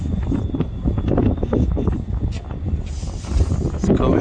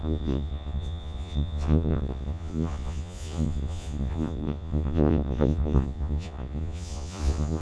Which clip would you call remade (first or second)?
second